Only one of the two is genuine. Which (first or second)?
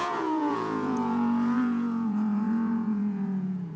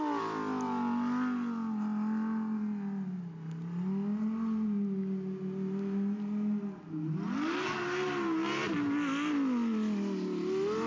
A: second